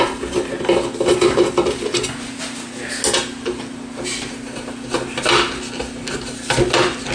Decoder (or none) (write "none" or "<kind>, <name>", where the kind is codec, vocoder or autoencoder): none